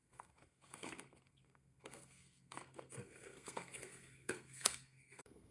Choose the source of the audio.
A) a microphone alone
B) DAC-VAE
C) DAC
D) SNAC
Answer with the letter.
D